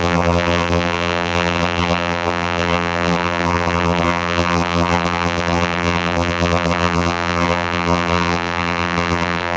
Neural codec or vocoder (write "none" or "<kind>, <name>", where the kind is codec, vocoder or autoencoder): vocoder, BigVGAN v2